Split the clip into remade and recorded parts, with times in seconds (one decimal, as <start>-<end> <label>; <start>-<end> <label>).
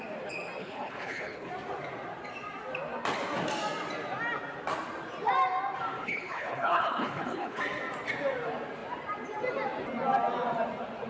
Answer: 0.0-0.6 recorded; 0.6-1.5 remade; 1.5-6.0 recorded; 6.0-7.6 remade; 7.6-11.1 recorded